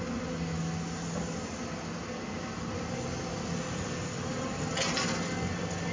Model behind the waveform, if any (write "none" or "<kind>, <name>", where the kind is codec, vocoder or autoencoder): none